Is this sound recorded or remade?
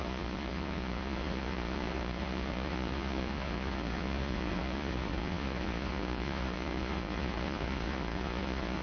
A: remade